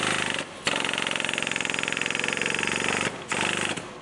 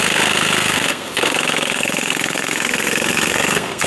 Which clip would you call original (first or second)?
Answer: first